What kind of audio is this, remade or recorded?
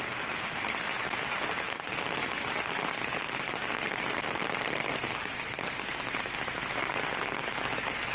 recorded